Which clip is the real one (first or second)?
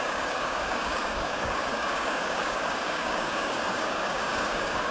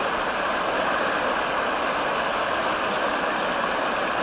second